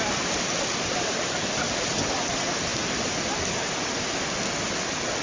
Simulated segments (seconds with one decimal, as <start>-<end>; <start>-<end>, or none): none